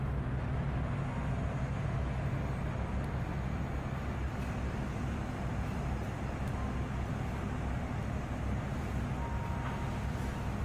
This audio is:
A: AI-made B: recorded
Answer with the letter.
B